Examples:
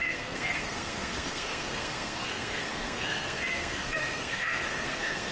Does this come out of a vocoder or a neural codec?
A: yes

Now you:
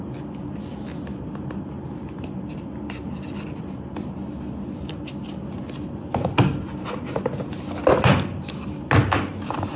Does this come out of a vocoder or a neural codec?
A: no